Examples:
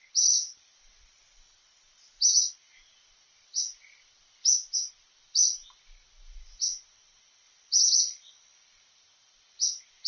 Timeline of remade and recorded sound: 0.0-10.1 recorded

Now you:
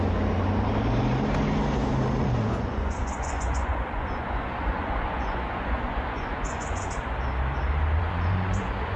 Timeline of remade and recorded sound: 0.0-2.2 recorded; 2.2-7.0 remade; 7.0-8.0 recorded; 8.0-9.0 remade

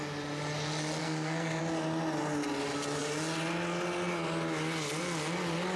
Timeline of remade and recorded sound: 0.0-1.0 recorded; 1.0-1.6 remade; 1.6-5.8 recorded

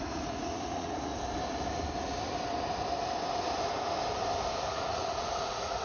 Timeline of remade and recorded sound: 0.0-1.1 remade; 1.1-4.6 recorded; 4.6-5.8 remade